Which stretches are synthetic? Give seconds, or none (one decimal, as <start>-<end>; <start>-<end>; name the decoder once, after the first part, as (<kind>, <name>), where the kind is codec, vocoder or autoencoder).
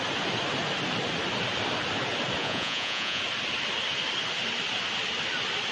2.4-3.2 (vocoder, Vocos)